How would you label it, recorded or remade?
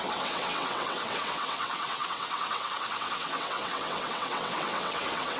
remade